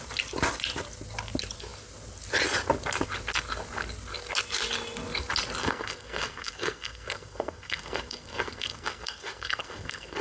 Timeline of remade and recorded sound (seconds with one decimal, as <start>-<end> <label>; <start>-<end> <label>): 0.0-5.6 recorded; 5.6-10.2 remade

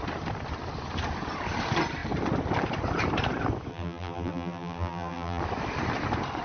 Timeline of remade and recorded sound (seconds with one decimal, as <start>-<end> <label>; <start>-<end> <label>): 0.0-3.7 recorded; 3.7-5.4 remade; 5.4-6.4 recorded